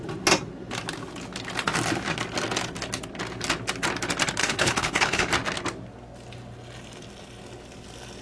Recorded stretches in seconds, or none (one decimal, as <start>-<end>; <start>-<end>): 0.0-4.4; 5.3-8.2